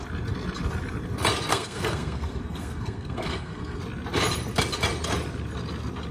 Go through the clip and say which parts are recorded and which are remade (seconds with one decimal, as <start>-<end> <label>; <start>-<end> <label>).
0.0-1.5 recorded; 1.5-3.8 remade; 3.8-6.1 recorded

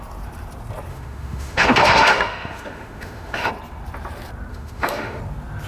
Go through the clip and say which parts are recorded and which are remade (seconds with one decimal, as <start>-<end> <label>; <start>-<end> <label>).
0.0-0.9 recorded; 0.9-3.5 remade; 3.5-4.5 recorded; 4.5-5.2 remade; 5.2-5.7 recorded

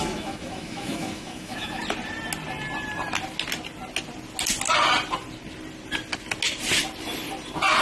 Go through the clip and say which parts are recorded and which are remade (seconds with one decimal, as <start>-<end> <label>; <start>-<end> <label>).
0.0-1.8 remade; 1.8-7.8 recorded

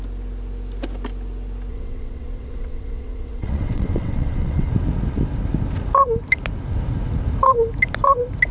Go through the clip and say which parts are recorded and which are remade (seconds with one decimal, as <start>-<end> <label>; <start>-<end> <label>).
0.0-1.7 recorded; 1.7-4.7 remade; 4.7-8.5 recorded